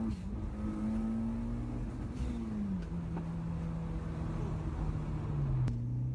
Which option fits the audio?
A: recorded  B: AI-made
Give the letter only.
A